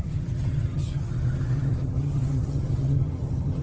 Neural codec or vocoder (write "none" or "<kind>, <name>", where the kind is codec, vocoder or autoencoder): vocoder, HiFi-GAN